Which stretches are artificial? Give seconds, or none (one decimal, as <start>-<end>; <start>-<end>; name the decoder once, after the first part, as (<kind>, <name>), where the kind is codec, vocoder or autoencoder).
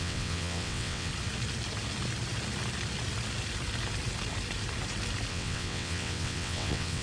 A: 0.0-1.1 (vocoder, WaveNeXt); 5.3-7.0